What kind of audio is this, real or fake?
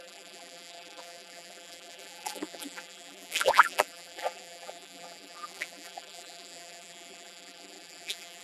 fake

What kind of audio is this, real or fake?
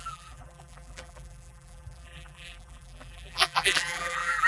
fake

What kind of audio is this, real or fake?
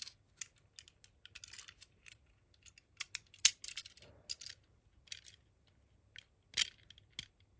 real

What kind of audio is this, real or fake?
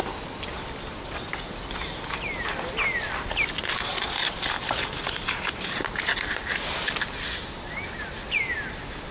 real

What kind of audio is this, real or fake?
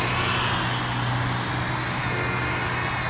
real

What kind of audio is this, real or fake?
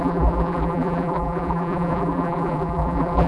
fake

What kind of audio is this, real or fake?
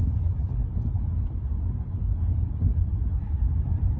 fake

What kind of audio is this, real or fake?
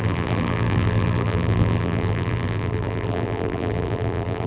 fake